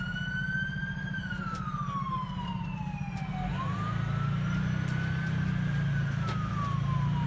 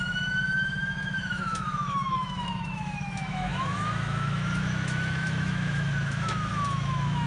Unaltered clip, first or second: first